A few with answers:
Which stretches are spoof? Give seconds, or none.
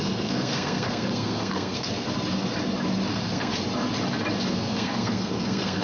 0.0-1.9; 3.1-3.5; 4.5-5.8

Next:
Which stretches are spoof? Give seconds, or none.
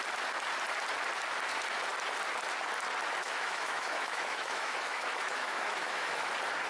3.2-6.3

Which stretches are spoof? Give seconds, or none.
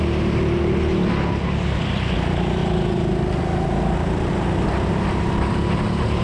none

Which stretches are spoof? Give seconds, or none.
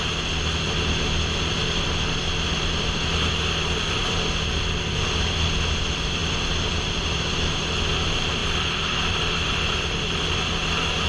6.2-7.3; 8.4-10.4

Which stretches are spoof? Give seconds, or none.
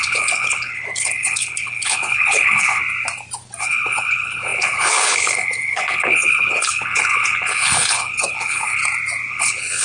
0.0-2.8; 3.6-8.8; 9.3-9.8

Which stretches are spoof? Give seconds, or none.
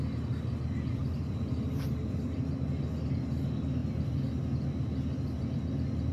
none